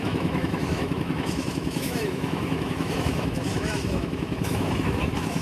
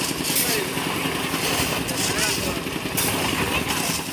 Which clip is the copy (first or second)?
first